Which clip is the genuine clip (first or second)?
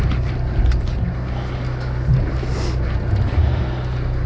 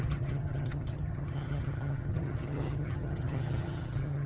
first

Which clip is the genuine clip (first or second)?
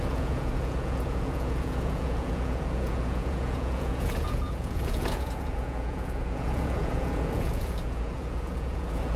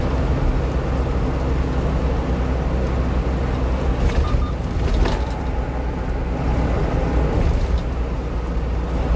second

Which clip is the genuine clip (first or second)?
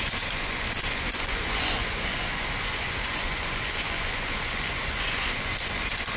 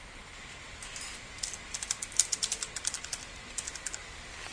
second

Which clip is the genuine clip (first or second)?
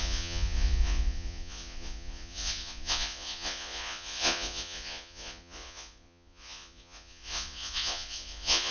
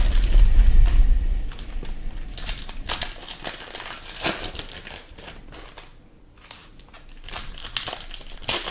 second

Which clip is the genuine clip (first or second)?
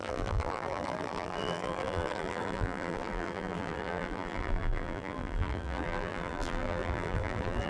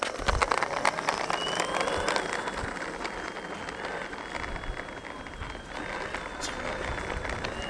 second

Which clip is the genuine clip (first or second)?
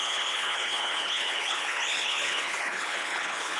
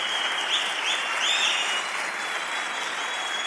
second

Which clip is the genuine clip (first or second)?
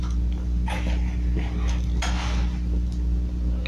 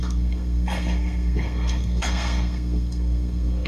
first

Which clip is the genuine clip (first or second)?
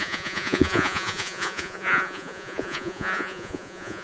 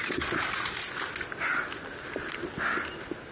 second